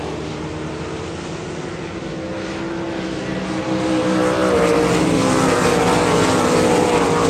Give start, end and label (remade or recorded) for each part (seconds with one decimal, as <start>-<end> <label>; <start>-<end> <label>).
0.0-7.3 recorded